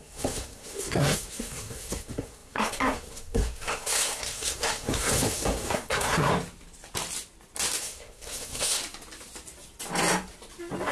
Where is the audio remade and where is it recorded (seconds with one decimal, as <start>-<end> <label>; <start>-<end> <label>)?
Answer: 0.0-6.3 remade; 6.3-7.8 recorded; 7.8-8.8 remade; 8.8-10.9 recorded